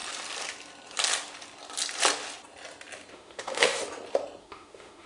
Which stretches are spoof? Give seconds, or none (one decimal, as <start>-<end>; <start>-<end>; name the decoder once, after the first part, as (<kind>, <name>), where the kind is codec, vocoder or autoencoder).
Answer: 3.1-3.8 (autoencoder, DAC-VAE); 4.4-5.1